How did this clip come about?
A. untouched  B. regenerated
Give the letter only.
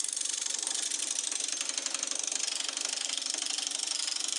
A